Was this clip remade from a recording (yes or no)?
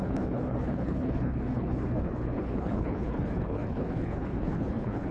yes